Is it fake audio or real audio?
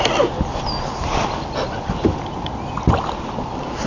real